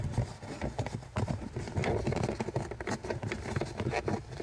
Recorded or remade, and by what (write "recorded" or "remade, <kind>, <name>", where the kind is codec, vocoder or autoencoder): recorded